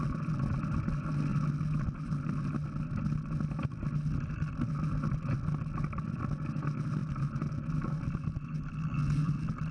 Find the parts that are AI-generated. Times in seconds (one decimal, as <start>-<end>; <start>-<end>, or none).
none